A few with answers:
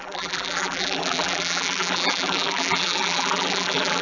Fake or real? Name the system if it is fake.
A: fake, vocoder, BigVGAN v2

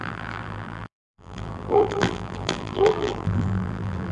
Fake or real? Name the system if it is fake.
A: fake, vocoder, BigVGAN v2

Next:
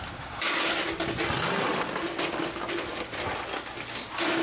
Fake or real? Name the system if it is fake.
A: real